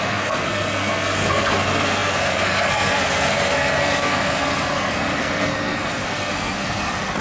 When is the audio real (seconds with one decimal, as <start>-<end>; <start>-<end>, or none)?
none